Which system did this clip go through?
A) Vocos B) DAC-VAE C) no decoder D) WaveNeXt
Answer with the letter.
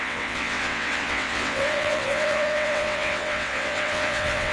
D